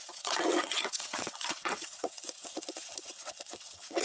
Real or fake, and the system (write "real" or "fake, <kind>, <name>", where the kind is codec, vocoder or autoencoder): fake, vocoder, WaveNeXt